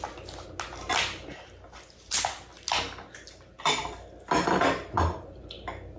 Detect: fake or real real